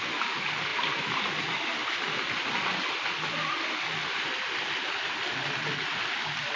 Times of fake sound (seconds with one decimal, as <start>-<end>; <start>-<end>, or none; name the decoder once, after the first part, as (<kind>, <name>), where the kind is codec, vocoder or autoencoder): none